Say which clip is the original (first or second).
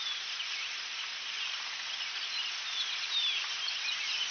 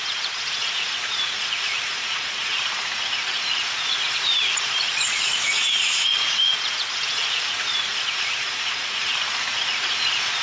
first